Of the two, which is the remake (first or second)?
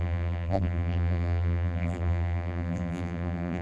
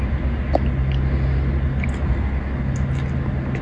first